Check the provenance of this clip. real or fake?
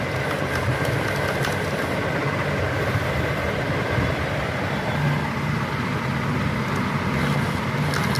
real